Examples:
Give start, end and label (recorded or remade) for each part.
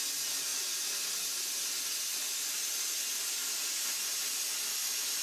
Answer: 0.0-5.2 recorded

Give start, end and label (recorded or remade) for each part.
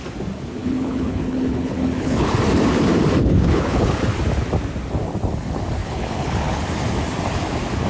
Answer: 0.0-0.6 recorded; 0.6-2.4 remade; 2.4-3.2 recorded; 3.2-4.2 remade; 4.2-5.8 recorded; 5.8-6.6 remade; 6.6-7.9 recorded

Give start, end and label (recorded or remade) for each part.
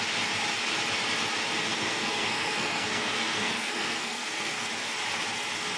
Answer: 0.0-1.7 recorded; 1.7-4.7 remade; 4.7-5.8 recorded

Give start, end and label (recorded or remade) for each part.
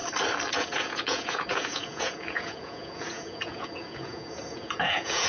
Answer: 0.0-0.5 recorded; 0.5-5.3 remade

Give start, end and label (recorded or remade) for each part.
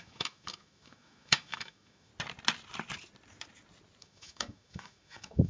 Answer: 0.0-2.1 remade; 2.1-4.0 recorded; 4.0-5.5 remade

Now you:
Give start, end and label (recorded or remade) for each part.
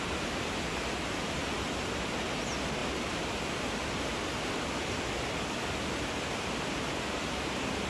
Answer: 0.0-7.9 recorded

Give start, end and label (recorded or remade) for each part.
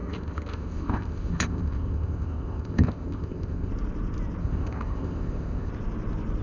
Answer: 0.0-3.7 remade; 3.7-4.4 recorded; 4.4-5.7 remade; 5.7-6.4 recorded